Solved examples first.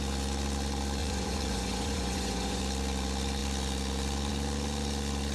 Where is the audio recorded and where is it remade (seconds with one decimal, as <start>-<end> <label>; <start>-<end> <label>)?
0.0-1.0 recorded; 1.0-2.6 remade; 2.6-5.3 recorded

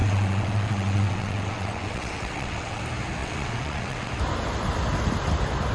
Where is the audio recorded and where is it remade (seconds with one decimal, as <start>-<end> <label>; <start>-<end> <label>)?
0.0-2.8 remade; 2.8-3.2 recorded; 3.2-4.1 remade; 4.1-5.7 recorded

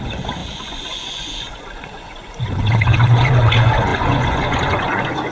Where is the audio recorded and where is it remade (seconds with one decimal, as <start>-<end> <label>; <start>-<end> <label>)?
0.0-5.3 remade

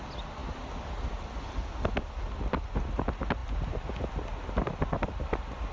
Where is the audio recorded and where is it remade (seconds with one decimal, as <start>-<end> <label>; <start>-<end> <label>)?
0.0-5.7 recorded

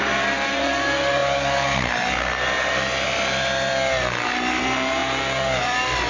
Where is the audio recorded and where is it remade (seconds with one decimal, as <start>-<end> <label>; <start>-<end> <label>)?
0.0-6.1 recorded

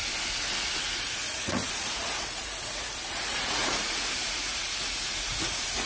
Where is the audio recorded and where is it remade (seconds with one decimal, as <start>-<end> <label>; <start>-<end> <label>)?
0.0-0.8 recorded; 0.8-5.9 remade

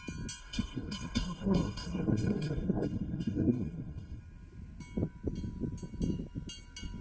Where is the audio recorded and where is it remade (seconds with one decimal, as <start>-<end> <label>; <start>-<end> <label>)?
0.0-0.4 recorded; 0.4-4.2 remade; 4.2-7.0 recorded

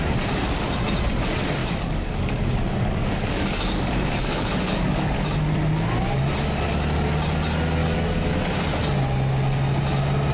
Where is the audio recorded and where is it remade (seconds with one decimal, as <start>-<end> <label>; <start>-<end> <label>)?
0.0-1.6 recorded; 1.6-5.1 remade; 5.1-7.8 recorded; 7.8-8.4 remade; 8.4-10.3 recorded